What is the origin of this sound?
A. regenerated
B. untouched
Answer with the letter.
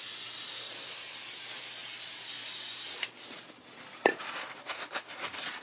B